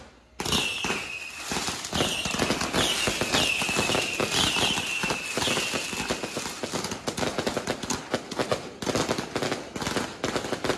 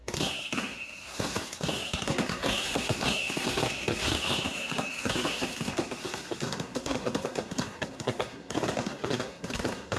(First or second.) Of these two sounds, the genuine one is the first